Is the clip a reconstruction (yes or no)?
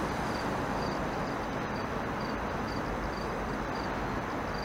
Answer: no